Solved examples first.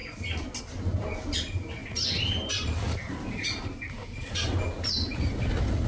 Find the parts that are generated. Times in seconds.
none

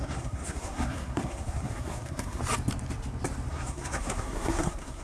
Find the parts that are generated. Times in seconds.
0.0-2.4; 3.5-5.0

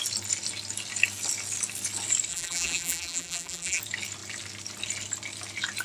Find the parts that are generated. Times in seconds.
2.3-3.8

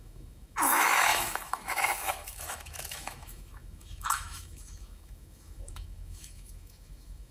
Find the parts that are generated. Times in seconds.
0.0-7.3

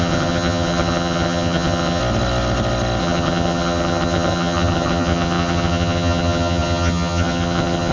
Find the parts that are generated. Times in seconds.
0.0-2.0; 3.0-7.9

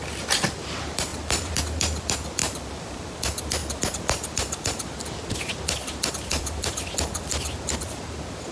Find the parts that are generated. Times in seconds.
1.1-1.6; 2.4-3.2; 5.8-8.0

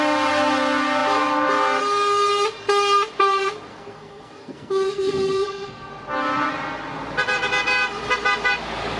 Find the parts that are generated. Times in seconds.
3.7-5.9

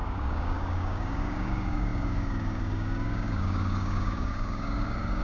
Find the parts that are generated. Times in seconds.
0.0-5.2